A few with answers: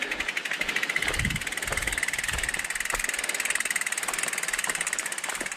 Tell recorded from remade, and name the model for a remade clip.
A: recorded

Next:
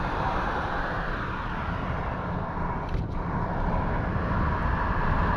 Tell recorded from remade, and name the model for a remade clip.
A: recorded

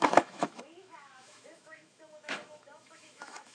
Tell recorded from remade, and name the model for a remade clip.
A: remade, autoencoder, DAC-VAE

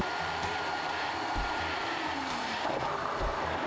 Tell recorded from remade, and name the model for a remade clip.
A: remade, vocoder, BigVGAN v2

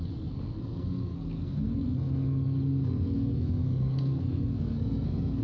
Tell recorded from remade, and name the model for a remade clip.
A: remade, codec, SNAC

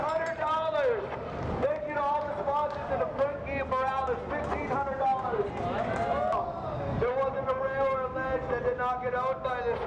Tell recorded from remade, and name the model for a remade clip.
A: recorded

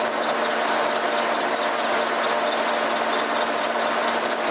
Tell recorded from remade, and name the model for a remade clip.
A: recorded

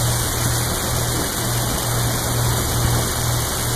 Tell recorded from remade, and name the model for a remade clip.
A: recorded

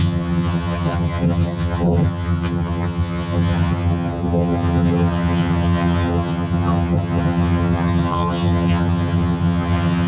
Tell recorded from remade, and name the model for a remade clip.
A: remade, vocoder, HiFi-GAN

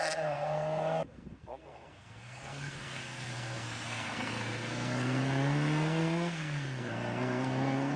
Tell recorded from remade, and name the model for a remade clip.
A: remade, codec, SNAC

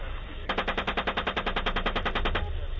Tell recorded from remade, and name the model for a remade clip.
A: recorded